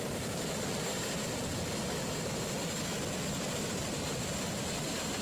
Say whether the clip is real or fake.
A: real